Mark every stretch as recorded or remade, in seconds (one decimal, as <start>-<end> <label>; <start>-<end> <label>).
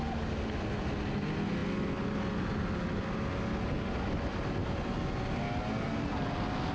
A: 0.0-6.7 recorded